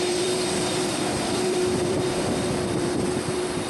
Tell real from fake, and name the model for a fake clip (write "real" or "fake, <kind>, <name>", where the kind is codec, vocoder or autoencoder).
fake, vocoder, BigVGAN v2